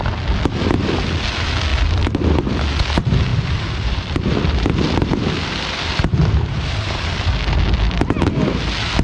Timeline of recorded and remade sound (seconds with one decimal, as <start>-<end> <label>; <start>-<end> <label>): 0.0-1.7 recorded; 1.7-2.6 remade; 2.6-3.3 recorded; 3.3-7.3 remade; 7.3-9.0 recorded